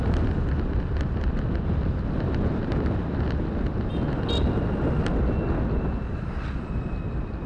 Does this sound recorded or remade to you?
recorded